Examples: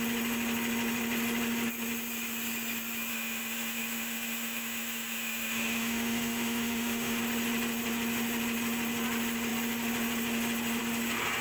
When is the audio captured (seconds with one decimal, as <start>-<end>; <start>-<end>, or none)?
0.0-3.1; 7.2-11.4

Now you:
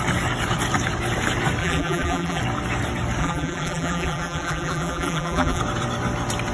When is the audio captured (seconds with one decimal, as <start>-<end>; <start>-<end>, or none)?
0.0-1.6; 2.4-3.2; 5.6-6.5

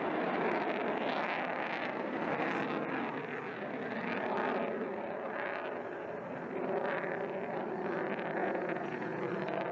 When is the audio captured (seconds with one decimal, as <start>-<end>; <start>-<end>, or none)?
0.0-8.4; 9.2-9.7

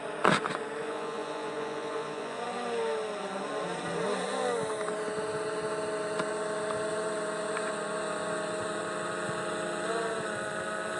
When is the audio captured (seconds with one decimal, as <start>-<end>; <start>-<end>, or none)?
0.0-0.8; 2.4-11.0

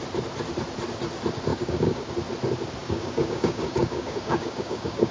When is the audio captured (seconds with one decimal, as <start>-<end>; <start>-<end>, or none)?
0.0-1.5; 2.1-2.8

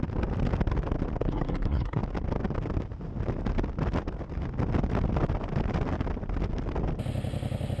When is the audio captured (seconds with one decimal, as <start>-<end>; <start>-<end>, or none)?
0.0-1.2; 2.0-7.8

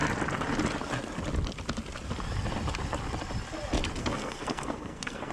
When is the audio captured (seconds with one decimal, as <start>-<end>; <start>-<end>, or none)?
0.0-4.0